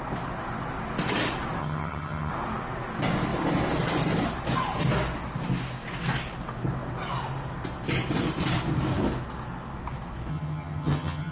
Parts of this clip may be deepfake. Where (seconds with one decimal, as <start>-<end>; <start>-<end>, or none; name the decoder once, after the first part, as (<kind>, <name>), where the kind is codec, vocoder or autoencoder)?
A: 1.6-2.3 (vocoder, HiFi-GAN); 10.3-11.3